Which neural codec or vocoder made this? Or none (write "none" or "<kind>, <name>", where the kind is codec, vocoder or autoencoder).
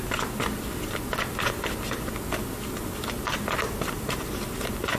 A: none